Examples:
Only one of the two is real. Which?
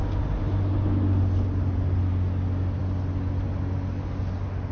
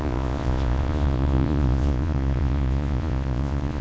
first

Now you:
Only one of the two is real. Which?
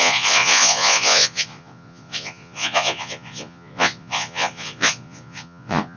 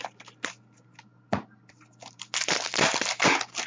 second